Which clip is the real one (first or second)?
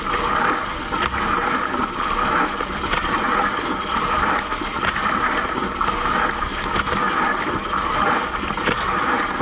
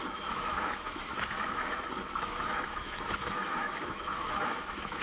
first